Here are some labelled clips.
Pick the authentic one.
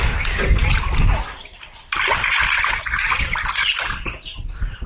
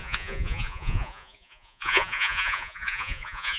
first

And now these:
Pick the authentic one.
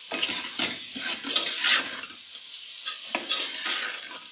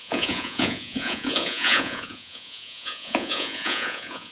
first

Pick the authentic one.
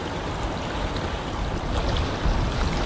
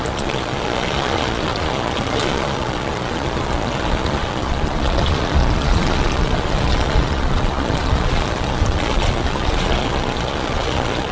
first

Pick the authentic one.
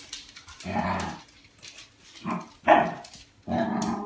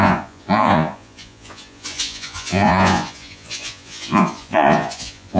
first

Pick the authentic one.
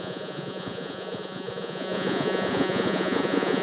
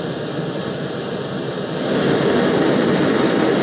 second